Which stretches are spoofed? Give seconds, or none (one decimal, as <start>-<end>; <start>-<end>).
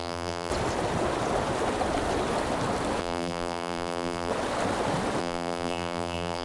0.0-0.5; 3.0-4.3; 5.2-6.4